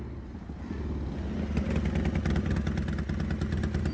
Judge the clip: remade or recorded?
recorded